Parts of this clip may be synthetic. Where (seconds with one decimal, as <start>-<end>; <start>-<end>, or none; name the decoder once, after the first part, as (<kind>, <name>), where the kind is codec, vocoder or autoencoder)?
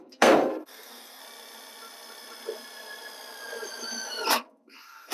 0.0-1.2 (codec, SNAC); 4.3-5.1